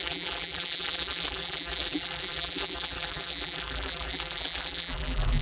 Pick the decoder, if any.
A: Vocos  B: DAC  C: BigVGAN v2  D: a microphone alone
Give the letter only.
C